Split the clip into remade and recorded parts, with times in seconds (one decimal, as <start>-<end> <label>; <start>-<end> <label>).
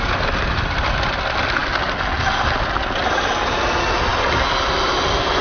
0.0-5.4 recorded